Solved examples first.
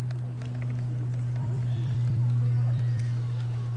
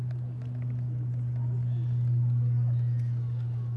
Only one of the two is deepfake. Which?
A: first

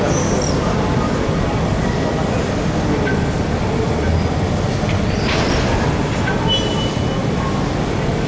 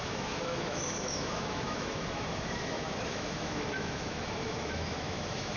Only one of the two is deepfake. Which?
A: second